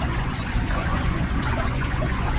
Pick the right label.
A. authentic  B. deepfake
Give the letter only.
B